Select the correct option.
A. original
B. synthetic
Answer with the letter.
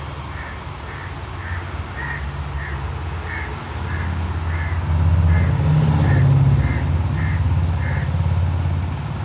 A